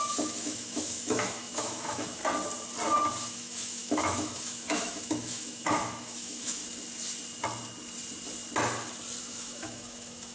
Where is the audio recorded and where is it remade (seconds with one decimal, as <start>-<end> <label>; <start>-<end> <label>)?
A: 0.0-2.2 remade; 2.2-3.3 recorded; 3.3-6.6 remade; 6.6-9.2 recorded; 9.2-10.3 remade